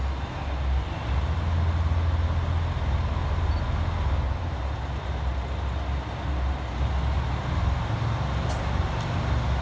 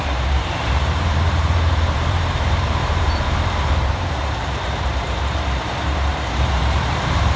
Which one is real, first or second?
first